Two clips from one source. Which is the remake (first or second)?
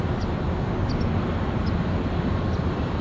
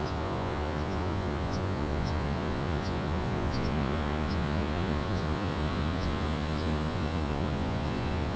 second